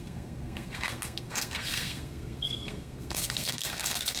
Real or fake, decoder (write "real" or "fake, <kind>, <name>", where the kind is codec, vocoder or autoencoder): fake, codec, SNAC